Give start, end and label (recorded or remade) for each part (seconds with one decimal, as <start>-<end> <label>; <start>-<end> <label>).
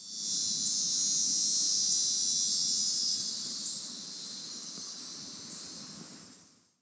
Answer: 0.0-4.4 recorded; 4.4-5.0 remade; 5.0-6.8 recorded